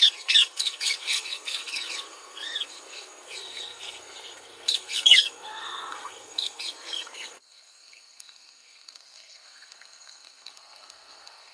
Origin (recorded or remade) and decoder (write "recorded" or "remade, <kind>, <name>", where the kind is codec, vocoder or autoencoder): remade, codec, SNAC